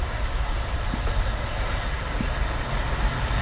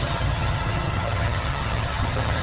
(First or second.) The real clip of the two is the first